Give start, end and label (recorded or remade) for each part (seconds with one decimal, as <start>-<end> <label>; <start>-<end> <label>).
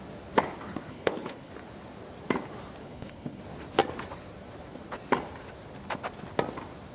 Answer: 0.0-0.9 recorded; 0.9-1.5 remade; 1.5-2.8 recorded; 2.8-3.4 remade; 3.4-6.9 recorded